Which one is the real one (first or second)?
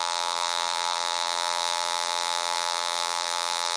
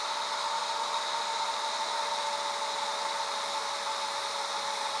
second